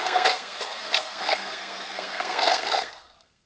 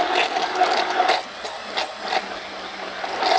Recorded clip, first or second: second